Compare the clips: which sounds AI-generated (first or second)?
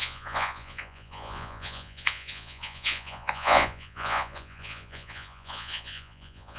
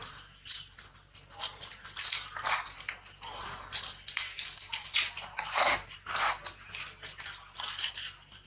first